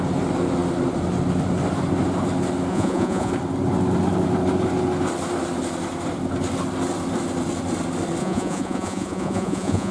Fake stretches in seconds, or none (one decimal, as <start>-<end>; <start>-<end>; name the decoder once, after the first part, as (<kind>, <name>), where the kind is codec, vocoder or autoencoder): 2.7-3.3 (vocoder, Vocos); 8.2-9.9